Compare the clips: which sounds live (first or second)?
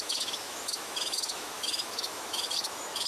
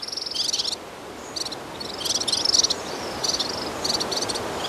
second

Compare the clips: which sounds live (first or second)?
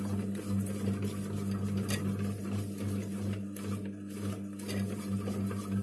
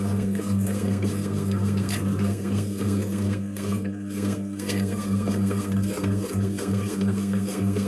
first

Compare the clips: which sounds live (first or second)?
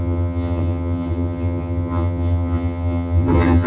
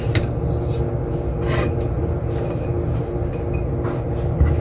second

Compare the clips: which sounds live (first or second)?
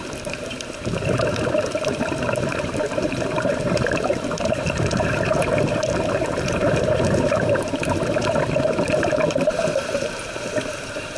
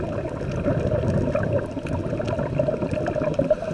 second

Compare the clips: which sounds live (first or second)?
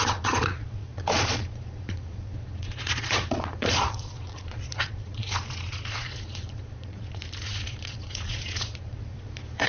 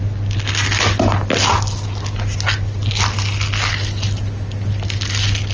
second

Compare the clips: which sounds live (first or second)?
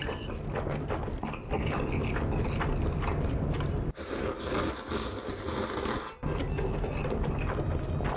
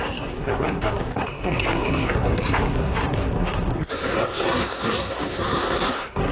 first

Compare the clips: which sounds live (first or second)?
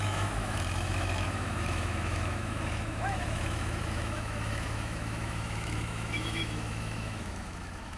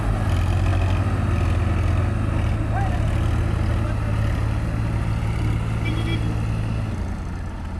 second